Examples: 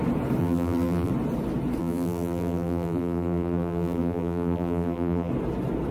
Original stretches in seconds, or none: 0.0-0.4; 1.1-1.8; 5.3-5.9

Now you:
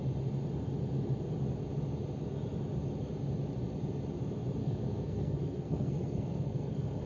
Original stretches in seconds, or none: 0.0-4.6

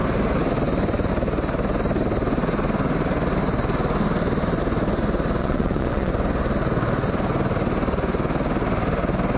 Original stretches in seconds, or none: 0.0-5.4; 6.1-9.4

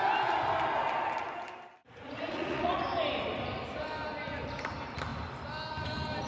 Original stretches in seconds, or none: 0.0-1.8; 2.8-6.3

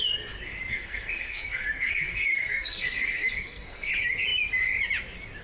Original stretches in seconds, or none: 0.0-0.7; 3.9-5.4